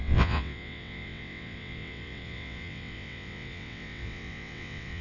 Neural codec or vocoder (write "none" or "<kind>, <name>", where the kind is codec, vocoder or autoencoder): vocoder, WaveNeXt